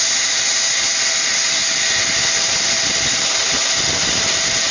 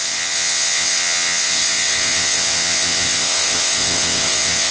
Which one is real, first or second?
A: first